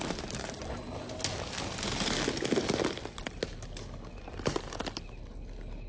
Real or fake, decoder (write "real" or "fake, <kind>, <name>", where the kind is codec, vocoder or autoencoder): real